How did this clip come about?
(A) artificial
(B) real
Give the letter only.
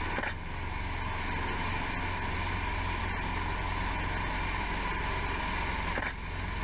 B